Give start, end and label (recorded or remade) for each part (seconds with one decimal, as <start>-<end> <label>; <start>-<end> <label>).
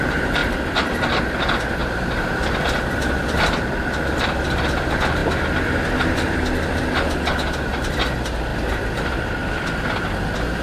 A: 0.0-0.4 recorded; 0.4-1.2 remade; 1.2-1.8 recorded; 1.8-4.5 remade; 4.5-5.2 recorded; 5.2-6.7 remade; 6.7-8.5 recorded; 8.5-10.0 remade; 10.0-10.6 recorded